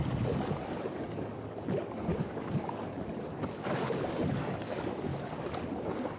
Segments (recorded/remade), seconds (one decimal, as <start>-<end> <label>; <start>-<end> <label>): 0.0-5.1 remade; 5.1-5.8 recorded; 5.8-6.2 remade